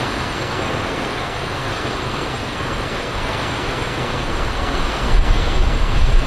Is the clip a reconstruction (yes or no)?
yes